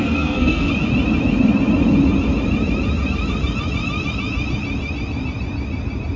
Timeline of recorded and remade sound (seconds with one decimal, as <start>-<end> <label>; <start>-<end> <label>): 0.0-0.7 remade; 0.7-6.2 recorded